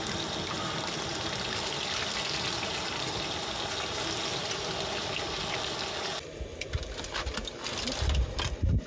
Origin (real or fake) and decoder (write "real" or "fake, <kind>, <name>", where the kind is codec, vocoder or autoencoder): real